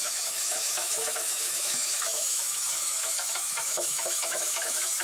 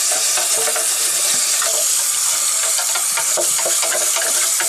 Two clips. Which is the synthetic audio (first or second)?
first